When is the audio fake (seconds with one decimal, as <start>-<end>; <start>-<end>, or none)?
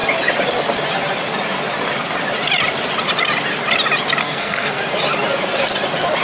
4.2-4.8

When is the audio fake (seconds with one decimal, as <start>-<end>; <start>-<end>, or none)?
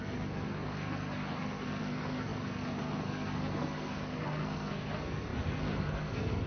0.0-6.5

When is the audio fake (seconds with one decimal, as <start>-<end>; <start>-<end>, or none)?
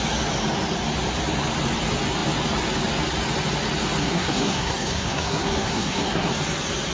4.0-6.3